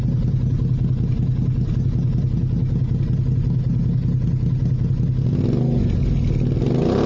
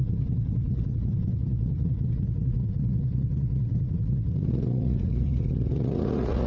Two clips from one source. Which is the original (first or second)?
first